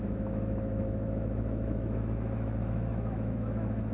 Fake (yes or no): yes